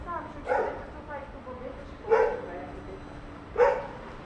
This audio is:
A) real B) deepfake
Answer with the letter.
A